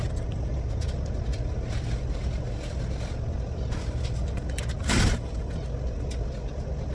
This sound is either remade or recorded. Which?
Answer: recorded